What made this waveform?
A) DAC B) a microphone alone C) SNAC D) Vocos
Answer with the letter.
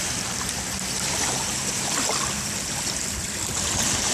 B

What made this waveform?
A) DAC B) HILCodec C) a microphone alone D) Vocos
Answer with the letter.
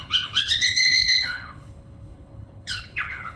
B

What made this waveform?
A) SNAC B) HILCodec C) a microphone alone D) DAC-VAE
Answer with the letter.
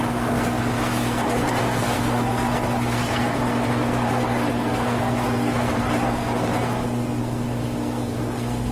A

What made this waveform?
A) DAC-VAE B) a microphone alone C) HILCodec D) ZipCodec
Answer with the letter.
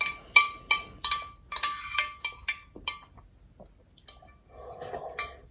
B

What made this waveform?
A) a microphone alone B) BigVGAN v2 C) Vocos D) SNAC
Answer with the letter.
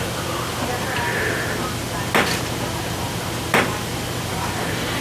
A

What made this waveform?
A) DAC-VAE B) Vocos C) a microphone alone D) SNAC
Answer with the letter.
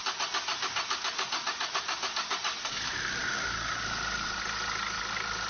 C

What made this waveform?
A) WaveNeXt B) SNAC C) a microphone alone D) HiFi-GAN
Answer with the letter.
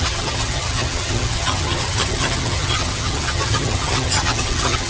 D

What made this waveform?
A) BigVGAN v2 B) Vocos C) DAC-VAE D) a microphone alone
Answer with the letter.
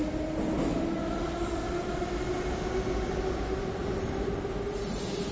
D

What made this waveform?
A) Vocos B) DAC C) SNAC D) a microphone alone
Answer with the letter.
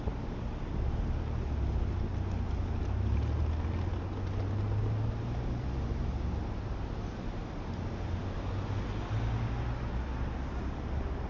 D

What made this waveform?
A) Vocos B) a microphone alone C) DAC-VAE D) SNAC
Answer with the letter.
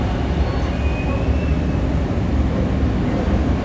B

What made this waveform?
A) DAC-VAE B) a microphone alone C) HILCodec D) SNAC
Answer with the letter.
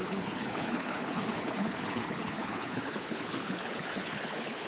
C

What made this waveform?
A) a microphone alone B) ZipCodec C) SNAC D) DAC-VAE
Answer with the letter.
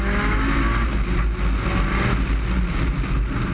A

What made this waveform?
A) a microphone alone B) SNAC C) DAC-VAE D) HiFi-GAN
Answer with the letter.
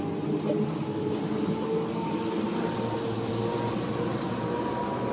A